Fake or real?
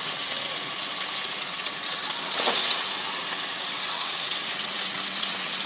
fake